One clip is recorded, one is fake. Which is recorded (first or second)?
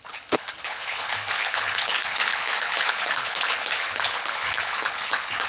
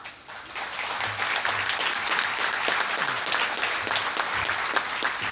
second